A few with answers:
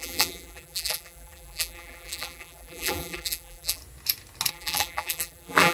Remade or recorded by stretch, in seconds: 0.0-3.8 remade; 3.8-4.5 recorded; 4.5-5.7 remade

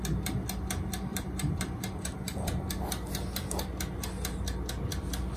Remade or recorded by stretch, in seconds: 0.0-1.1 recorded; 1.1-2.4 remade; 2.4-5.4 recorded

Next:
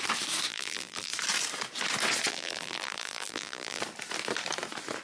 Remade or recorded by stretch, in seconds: 0.0-0.5 recorded; 0.5-1.1 remade; 1.1-2.3 recorded; 2.3-3.8 remade; 3.8-5.0 recorded

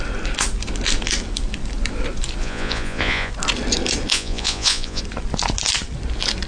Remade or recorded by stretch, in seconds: 0.0-2.4 recorded; 2.4-3.3 remade; 3.3-4.1 recorded; 4.1-5.0 remade; 5.0-6.5 recorded